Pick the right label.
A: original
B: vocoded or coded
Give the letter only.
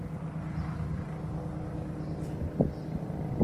A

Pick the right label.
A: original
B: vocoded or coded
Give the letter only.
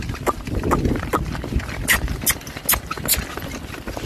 A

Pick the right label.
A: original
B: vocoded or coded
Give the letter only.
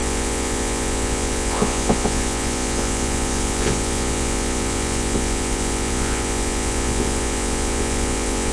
B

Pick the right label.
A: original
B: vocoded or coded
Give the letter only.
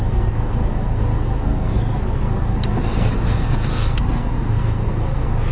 B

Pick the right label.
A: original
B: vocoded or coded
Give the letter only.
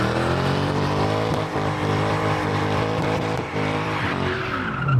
B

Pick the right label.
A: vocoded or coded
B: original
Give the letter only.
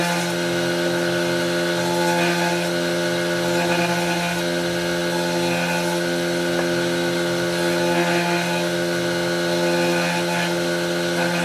B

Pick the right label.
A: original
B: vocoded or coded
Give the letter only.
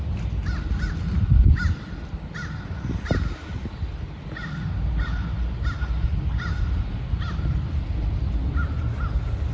A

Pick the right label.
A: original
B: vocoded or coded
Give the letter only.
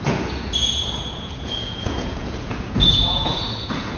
B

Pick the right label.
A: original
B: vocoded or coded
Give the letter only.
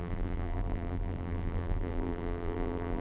B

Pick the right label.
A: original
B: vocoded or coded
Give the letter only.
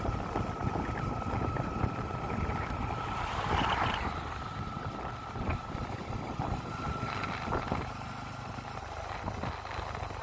A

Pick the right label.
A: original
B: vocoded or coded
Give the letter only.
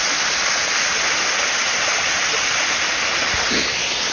A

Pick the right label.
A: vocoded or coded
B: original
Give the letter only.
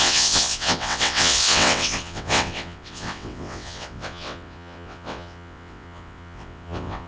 A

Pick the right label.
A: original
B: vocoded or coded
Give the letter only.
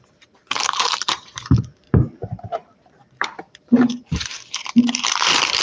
B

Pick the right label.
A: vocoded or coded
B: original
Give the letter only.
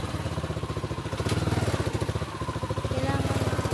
B